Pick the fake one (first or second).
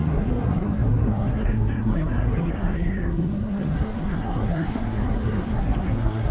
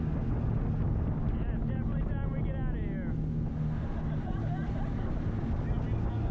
first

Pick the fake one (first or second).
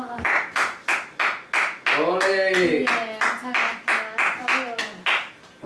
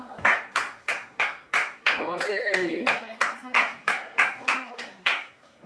second